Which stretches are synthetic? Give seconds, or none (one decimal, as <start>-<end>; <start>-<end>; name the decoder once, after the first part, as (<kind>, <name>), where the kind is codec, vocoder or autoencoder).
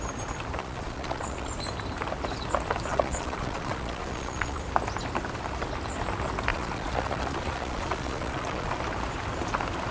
0.6-1.5 (vocoder, Vocos); 2.9-4.6; 6.5-8.7